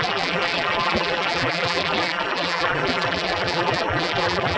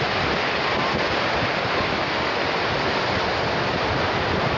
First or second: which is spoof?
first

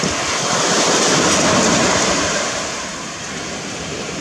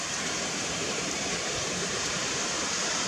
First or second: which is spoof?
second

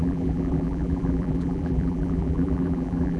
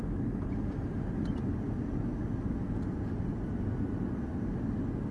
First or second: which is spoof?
first